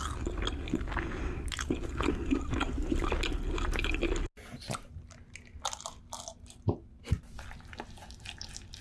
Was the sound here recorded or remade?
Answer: recorded